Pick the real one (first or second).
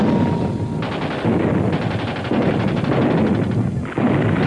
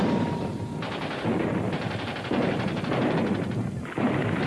first